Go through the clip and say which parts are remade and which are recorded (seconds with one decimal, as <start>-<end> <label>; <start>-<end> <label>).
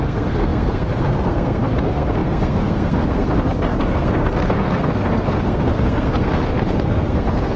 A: 0.0-7.6 remade